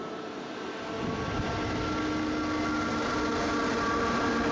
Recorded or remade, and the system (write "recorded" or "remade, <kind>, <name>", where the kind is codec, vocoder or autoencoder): recorded